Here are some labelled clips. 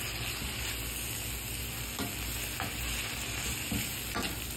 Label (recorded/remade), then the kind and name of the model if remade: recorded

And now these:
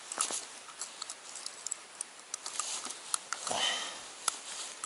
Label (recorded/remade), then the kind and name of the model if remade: recorded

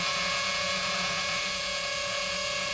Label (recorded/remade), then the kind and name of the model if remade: remade, vocoder, Vocos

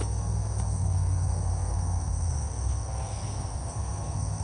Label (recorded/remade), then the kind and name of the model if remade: remade, codec, SNAC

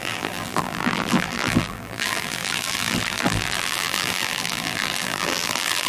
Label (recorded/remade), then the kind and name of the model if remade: remade, vocoder, BigVGAN v2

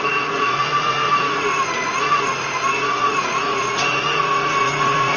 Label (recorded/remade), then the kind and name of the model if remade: remade, vocoder, Vocos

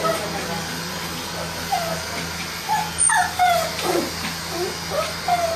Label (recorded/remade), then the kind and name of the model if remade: recorded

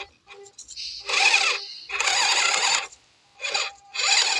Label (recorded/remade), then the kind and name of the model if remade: recorded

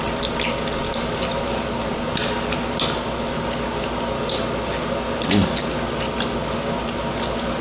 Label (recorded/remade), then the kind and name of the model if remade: recorded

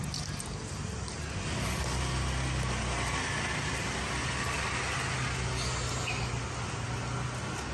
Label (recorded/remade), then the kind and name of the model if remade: recorded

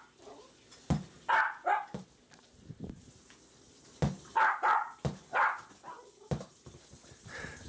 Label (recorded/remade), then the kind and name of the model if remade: recorded